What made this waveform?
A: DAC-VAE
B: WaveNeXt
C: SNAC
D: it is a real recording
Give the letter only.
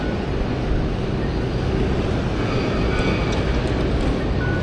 D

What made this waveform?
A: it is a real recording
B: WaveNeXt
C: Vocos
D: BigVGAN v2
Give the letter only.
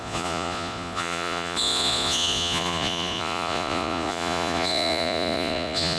C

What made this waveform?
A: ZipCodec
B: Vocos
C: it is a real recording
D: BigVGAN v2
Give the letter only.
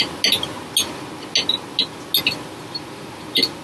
C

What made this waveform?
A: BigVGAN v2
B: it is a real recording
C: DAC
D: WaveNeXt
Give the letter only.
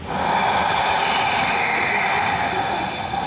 B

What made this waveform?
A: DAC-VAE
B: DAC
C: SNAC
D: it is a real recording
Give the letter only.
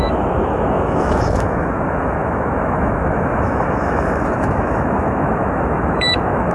A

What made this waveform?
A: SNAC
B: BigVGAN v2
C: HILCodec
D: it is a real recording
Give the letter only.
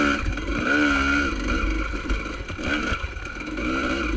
D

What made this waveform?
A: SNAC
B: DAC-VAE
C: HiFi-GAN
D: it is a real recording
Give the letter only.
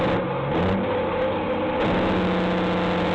D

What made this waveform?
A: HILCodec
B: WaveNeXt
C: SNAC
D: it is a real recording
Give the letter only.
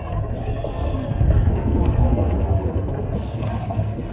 C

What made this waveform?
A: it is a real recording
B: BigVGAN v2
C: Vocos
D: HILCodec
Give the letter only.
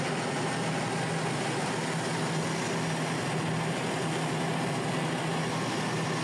A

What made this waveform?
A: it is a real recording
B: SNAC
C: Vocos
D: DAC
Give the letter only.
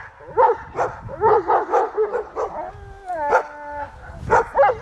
A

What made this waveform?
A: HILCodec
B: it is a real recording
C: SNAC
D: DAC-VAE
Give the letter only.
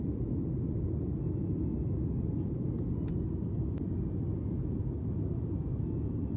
B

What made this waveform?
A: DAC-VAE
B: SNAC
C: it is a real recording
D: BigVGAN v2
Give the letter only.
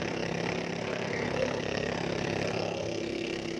B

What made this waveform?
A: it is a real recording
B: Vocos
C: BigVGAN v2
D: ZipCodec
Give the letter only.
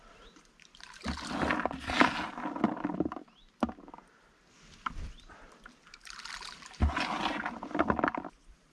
A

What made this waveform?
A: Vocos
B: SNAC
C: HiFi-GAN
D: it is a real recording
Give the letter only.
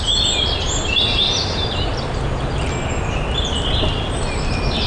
D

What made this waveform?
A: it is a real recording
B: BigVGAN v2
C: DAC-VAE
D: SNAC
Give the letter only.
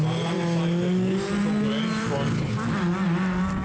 A